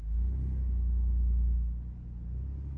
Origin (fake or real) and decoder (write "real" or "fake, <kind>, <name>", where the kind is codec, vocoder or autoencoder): real